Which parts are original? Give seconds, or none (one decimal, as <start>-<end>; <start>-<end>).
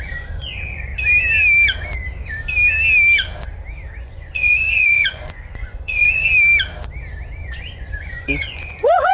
0.9-4.0; 6.3-7.4